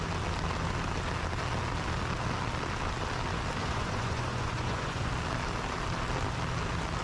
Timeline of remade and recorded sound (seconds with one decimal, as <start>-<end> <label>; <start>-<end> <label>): 0.0-3.6 recorded; 3.6-5.1 remade; 5.1-7.0 recorded